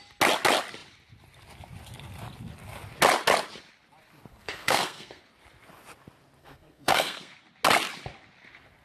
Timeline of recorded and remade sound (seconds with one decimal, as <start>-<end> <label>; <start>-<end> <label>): 0.0-4.3 recorded; 4.3-5.2 remade; 5.2-6.4 recorded; 6.4-7.3 remade; 7.3-8.8 recorded